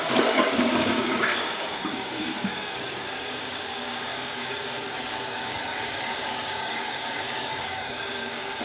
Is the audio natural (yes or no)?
no